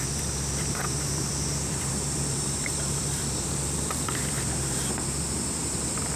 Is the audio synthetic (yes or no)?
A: yes